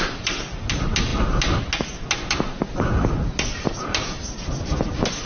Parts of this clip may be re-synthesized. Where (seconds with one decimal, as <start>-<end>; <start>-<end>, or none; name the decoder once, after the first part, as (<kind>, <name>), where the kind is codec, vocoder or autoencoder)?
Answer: none